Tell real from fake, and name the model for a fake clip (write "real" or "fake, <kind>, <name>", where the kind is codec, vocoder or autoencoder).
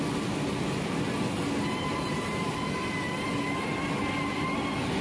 real